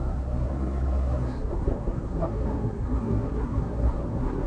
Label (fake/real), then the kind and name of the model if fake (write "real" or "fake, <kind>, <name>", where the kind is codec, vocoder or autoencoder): fake, codec, SNAC